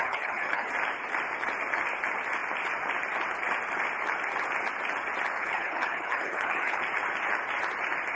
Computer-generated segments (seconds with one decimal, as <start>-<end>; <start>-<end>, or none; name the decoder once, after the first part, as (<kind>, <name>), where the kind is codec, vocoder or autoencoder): 0.0-0.7 (codec, HILCodec); 5.4-6.8